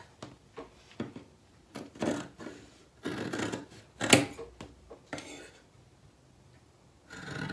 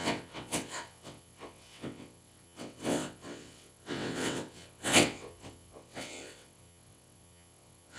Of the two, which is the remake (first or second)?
second